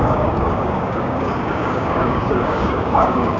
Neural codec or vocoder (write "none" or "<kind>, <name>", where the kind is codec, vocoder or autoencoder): codec, DAC